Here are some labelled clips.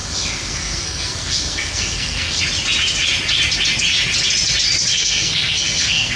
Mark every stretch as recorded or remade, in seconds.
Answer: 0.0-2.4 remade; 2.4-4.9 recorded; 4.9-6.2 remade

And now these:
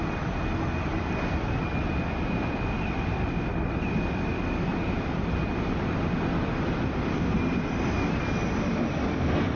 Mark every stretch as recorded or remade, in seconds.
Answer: 0.0-9.6 recorded